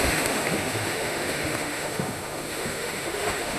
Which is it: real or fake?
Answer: fake